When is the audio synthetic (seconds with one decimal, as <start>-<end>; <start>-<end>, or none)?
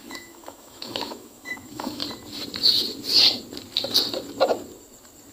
0.0-2.0